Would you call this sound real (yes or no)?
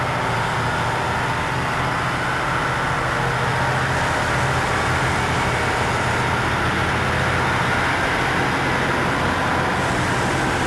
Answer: yes